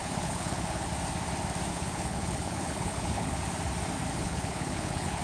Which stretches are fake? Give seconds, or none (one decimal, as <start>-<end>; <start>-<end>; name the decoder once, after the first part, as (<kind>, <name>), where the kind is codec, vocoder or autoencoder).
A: 0.0-0.9 (codec, HILCodec); 1.7-3.4; 4.1-5.2